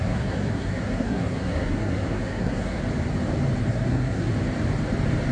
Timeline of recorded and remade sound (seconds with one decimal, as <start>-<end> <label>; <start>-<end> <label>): 0.0-2.8 remade; 2.8-3.7 recorded; 3.7-4.3 remade; 4.3-5.3 recorded